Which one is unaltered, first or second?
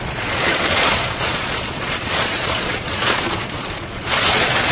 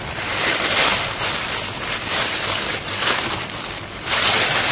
second